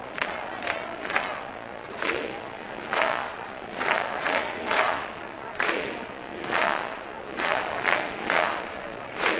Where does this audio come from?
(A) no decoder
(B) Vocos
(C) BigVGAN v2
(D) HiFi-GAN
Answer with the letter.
B